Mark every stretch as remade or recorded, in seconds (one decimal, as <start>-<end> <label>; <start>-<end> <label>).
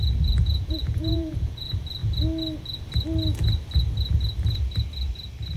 0.0-2.0 remade; 2.0-5.6 recorded